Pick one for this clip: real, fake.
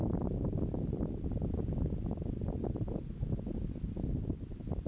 real